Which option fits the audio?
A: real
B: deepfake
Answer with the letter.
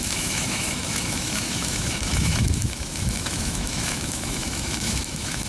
B